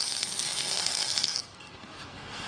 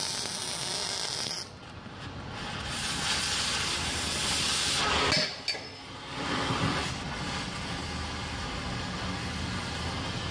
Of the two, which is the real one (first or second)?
second